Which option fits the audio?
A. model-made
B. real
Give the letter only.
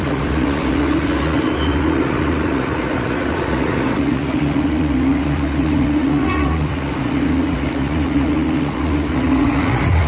A